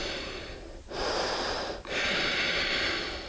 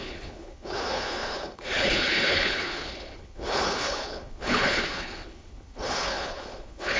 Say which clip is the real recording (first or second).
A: first